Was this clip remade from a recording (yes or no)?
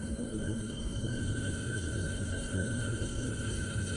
yes